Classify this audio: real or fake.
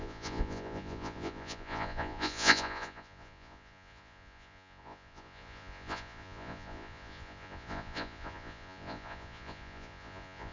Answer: fake